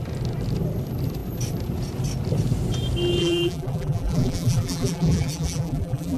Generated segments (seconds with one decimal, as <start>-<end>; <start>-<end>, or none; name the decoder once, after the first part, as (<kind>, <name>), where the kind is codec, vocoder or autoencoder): 3.2-6.2 (vocoder, BigVGAN v2)